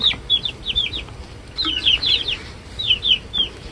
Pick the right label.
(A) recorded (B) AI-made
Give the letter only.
B